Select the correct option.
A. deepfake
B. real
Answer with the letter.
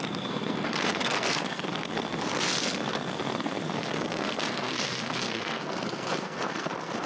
A